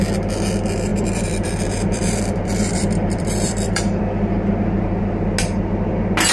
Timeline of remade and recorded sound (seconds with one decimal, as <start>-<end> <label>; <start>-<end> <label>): 0.0-0.9 recorded; 0.9-4.0 remade; 4.0-6.3 recorded